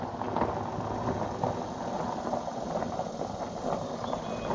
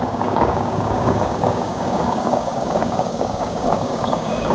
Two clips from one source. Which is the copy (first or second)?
second